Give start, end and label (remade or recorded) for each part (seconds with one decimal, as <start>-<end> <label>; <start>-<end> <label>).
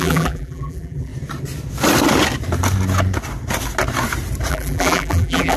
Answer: 0.0-1.1 remade; 1.1-4.5 recorded; 4.5-5.6 remade